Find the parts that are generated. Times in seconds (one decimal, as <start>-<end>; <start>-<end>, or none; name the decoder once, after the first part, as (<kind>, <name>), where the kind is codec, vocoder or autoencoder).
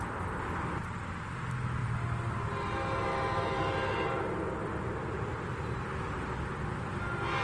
none